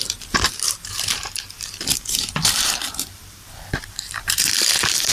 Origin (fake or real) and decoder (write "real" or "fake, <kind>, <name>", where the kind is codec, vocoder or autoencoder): fake, vocoder, BigVGAN v2